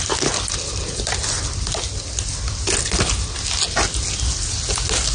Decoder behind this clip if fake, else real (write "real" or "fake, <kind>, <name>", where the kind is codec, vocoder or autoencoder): real